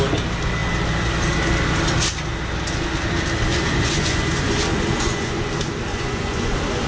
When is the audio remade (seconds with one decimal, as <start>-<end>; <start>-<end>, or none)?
3.5-5.5; 5.9-6.5